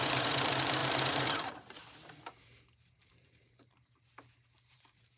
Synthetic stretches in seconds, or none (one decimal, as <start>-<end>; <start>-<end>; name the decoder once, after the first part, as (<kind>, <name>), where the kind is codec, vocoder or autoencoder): 0.0-5.2 (vocoder, BigVGAN v2)